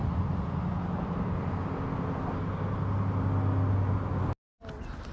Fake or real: real